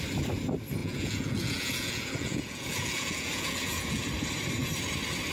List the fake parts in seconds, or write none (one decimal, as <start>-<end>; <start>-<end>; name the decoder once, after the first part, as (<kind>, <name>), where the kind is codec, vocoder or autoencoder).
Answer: 0.8-4.0 (vocoder, Vocos)